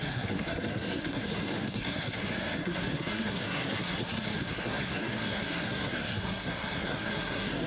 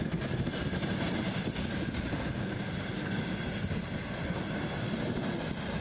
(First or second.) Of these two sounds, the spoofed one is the first